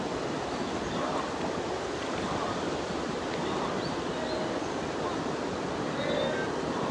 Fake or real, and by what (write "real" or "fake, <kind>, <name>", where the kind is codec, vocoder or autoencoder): real